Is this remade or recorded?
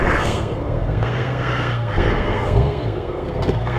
remade